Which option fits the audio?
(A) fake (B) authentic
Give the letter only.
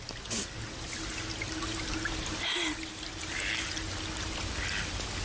B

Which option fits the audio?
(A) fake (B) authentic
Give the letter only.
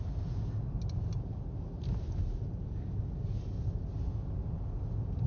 B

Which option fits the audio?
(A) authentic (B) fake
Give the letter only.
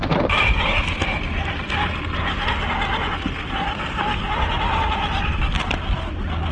A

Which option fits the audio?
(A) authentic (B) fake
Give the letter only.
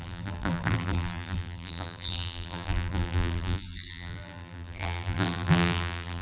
B